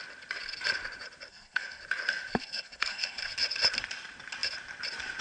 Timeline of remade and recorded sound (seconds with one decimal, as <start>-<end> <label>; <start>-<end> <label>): 0.0-1.3 recorded; 1.3-1.8 remade; 1.8-2.4 recorded; 2.4-3.3 remade; 3.3-5.2 recorded